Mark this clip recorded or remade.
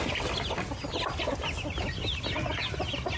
recorded